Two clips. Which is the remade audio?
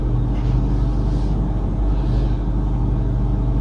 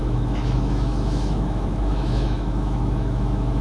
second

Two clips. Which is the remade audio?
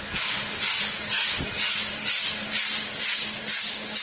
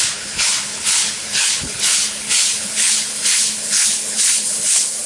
second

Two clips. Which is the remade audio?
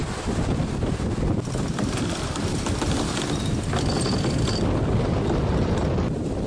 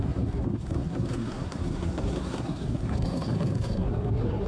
second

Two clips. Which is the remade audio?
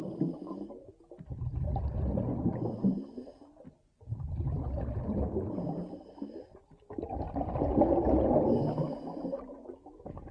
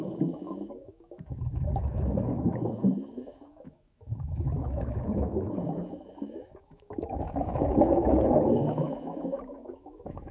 second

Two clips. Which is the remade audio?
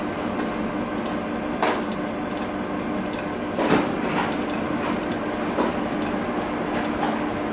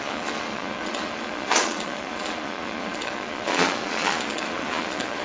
second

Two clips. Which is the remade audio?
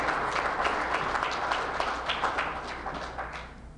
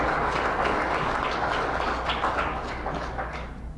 second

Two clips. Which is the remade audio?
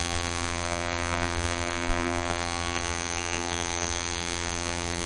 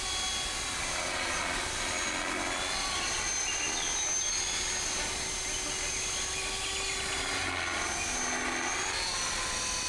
first